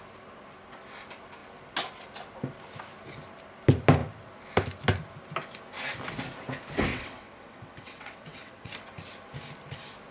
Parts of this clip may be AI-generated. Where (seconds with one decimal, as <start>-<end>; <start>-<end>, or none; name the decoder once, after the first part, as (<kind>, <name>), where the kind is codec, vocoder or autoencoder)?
6.9-8.7 (vocoder, WaveNeXt)